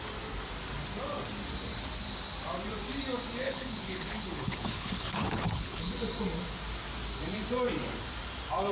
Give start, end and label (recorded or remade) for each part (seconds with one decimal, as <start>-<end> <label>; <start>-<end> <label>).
0.0-3.4 recorded; 3.4-5.9 remade; 5.9-8.7 recorded